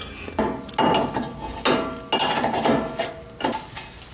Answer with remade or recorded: recorded